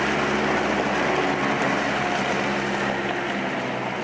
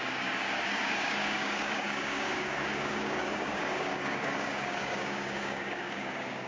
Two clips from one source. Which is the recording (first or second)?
first